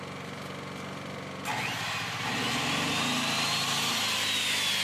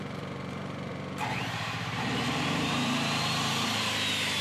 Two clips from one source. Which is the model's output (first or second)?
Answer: second